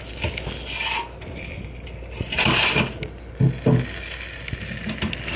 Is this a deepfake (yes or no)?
no